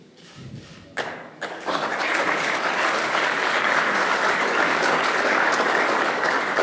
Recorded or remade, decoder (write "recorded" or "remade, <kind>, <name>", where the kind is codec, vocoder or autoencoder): remade, codec, DAC